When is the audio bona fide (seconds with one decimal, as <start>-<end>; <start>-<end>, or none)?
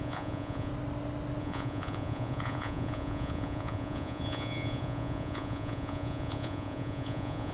0.7-1.4